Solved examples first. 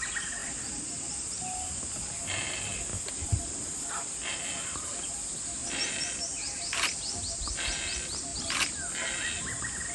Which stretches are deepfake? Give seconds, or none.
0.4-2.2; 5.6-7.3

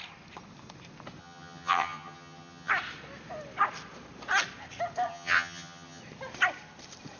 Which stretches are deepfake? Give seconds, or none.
1.2-2.7; 5.1-6.0

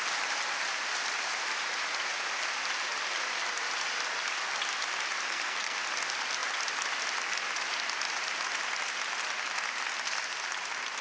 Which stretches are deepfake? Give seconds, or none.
5.3-5.8